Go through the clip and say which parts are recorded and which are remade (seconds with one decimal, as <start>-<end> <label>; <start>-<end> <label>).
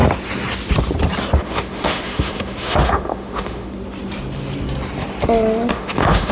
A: 0.0-1.4 recorded; 1.4-3.7 remade; 3.7-5.7 recorded; 5.7-6.3 remade